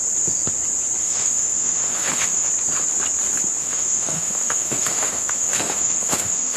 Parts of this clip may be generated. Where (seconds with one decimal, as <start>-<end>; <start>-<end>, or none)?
1.0-2.5; 3.6-6.6